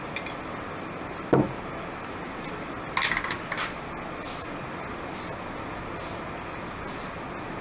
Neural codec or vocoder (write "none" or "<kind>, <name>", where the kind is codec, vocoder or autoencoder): none